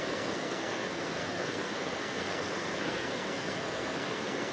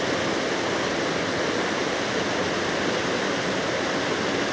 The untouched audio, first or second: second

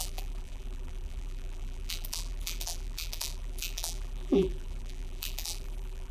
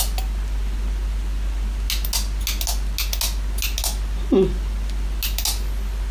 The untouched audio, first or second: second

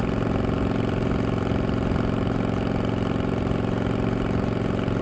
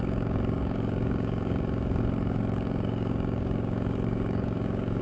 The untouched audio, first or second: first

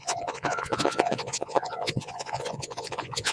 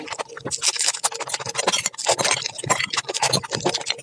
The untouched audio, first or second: second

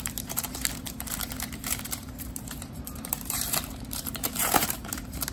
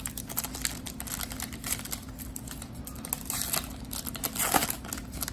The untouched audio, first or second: second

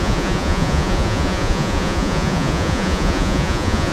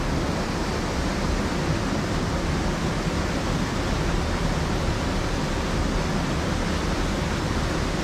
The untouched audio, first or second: second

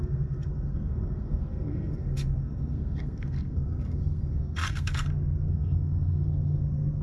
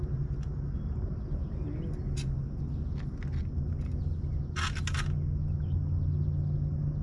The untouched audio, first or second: second